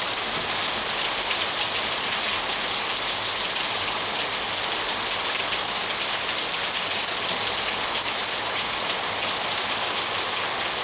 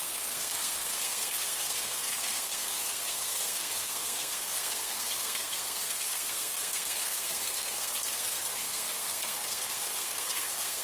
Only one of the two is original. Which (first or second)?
first